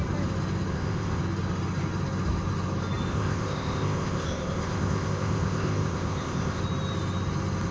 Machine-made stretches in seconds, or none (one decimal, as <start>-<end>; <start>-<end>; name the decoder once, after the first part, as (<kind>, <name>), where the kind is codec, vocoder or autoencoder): 0.7-1.2 (codec, ZipCodec); 3.1-6.6